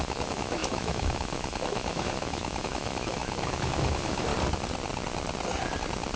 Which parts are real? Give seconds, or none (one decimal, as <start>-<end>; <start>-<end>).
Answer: 4.3-6.2